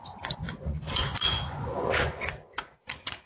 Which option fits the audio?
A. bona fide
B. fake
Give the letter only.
B